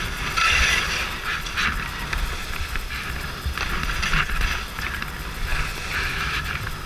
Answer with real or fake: real